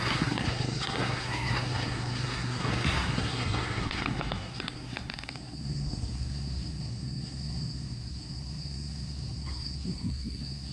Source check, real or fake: fake